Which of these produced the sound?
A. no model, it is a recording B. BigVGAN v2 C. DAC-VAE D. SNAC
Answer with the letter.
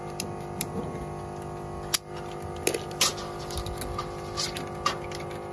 A